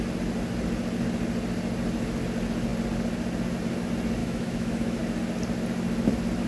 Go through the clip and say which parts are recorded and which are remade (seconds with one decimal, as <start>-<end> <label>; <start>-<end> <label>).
0.0-4.2 recorded; 4.2-5.0 remade; 5.0-6.5 recorded